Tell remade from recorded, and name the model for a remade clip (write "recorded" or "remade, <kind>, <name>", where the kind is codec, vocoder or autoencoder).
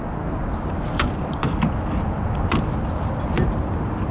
recorded